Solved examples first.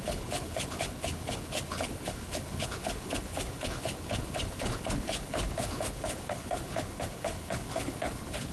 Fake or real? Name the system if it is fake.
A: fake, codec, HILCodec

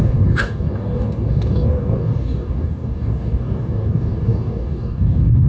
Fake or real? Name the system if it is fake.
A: fake, codec, DAC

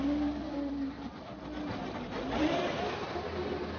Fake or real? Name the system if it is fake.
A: real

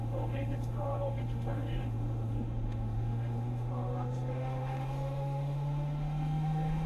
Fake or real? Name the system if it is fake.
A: fake, autoencoder, DAC-VAE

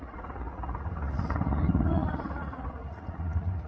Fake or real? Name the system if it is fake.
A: fake, vocoder, Vocos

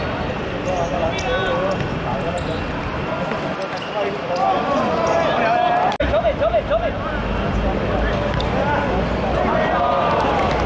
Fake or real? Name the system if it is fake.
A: real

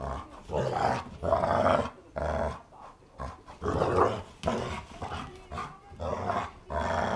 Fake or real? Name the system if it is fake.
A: real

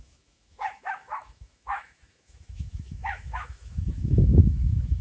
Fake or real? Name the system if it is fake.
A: fake, autoencoder, DAC-VAE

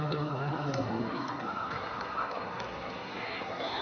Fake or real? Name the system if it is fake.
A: fake, codec, SNAC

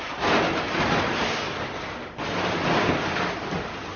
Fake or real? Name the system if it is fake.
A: real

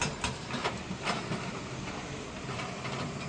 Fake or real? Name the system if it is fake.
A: real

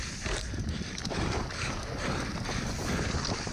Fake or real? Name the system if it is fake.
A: real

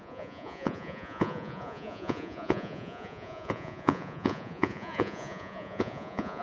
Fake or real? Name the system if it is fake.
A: fake, vocoder, Vocos